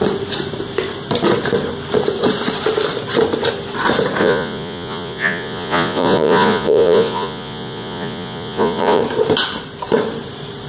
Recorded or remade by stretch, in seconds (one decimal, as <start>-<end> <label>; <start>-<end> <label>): 0.0-4.2 recorded; 4.2-9.0 remade; 9.0-10.7 recorded